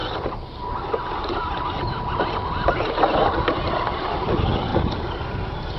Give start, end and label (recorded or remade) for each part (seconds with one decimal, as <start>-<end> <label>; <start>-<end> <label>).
0.0-5.8 recorded